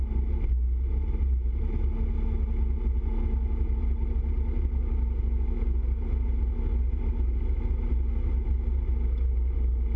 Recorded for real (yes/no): yes